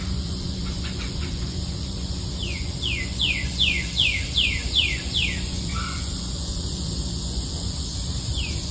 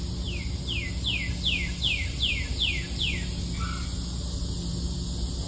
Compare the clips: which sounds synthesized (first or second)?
first